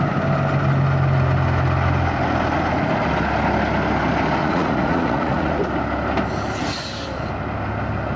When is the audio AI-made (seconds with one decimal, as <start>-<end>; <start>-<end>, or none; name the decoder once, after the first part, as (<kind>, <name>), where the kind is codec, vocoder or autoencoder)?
4.4-5.6 (vocoder, Vocos)